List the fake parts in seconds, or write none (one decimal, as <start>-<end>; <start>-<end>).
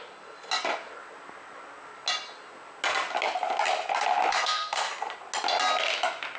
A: 4.3-4.9